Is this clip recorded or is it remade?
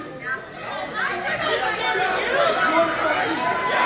recorded